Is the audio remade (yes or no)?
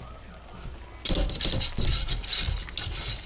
no